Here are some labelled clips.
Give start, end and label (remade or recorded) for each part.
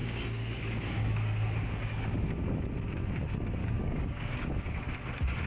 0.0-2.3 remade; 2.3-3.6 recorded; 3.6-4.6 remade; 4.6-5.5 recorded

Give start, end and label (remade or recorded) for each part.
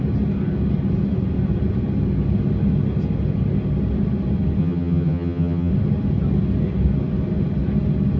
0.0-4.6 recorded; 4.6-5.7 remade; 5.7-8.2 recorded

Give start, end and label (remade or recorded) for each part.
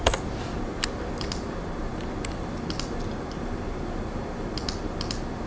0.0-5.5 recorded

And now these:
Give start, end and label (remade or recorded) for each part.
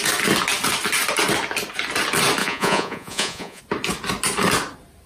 0.0-2.4 recorded; 2.4-3.6 remade; 3.6-5.1 recorded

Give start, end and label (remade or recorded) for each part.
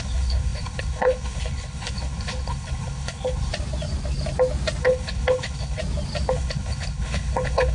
0.0-3.5 remade; 3.5-4.8 recorded; 4.8-5.8 remade; 5.8-6.3 recorded; 6.3-7.7 remade